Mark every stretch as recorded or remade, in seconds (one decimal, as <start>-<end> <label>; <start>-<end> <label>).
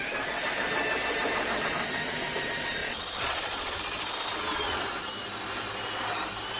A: 0.0-2.8 recorded; 2.8-3.8 remade; 3.8-4.4 recorded; 4.4-5.1 remade; 5.1-6.6 recorded